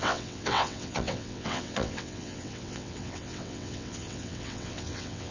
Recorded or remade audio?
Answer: remade